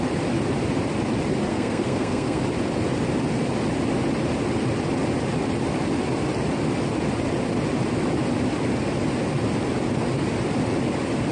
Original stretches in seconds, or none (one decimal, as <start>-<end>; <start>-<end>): 0.0-1.5; 2.4-11.3